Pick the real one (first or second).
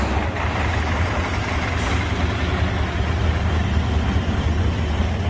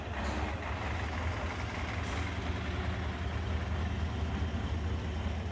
second